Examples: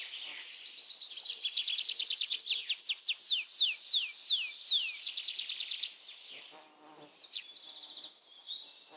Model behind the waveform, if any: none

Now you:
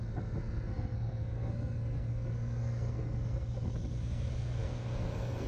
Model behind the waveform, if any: codec, SNAC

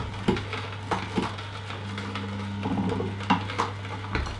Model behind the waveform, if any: none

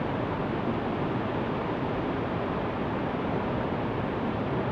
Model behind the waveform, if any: none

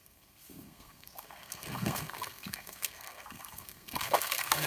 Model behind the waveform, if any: codec, SNAC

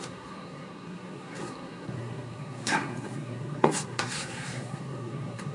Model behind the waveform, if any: codec, SNAC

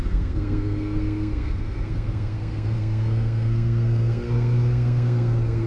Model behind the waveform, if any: codec, SNAC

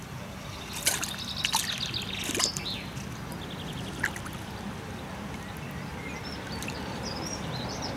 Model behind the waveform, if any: none